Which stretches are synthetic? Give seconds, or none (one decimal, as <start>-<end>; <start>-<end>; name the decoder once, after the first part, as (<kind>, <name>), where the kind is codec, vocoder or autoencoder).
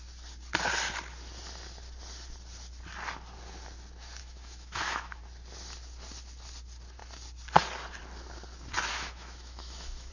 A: 4.2-5.2 (autoencoder, DAC-VAE); 8.9-10.1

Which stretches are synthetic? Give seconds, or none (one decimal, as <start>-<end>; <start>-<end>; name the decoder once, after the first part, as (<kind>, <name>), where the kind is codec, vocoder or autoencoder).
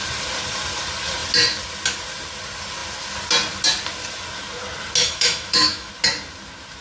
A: 5.0-5.9 (autoencoder, DAC-VAE)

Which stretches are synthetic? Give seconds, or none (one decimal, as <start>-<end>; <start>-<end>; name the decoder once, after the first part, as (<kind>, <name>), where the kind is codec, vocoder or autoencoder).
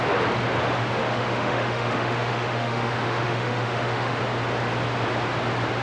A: 1.0-4.2 (autoencoder, DAC-VAE)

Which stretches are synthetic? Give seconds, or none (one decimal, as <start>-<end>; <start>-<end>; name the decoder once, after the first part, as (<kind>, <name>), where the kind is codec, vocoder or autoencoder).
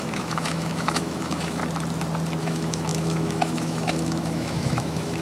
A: 0.0-1.6 (autoencoder, DAC-VAE); 2.4-5.2